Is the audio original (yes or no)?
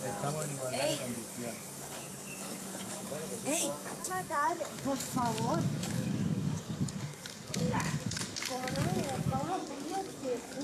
no